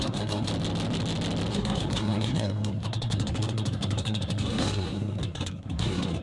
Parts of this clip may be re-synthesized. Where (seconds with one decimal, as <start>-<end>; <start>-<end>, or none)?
0.0-0.5; 1.5-6.2